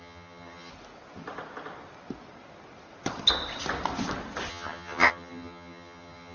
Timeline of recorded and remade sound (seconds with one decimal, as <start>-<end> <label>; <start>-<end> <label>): 0.0-0.7 remade; 0.7-4.5 recorded; 4.5-6.3 remade